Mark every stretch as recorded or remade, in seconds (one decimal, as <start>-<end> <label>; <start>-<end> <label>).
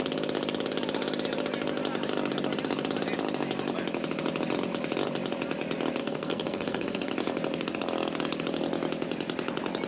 0.0-6.0 recorded; 6.0-7.1 remade; 7.1-9.9 recorded